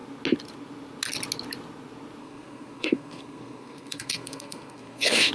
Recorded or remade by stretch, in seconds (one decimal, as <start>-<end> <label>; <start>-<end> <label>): 0.0-2.2 recorded; 2.2-5.3 remade